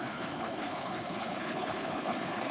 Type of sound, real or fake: fake